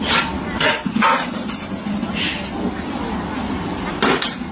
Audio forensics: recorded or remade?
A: recorded